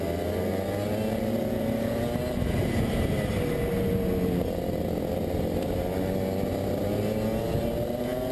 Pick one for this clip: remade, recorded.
recorded